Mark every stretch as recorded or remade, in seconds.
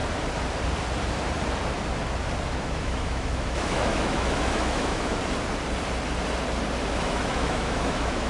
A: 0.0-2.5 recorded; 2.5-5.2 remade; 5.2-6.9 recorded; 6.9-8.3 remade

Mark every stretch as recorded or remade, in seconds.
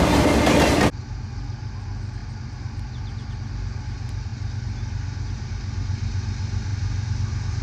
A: 0.0-7.6 recorded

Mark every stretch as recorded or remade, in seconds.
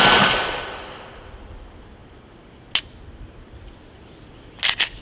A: 0.0-5.0 recorded